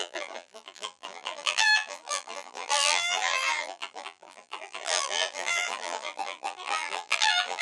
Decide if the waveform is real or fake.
fake